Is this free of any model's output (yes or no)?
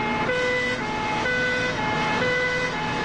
yes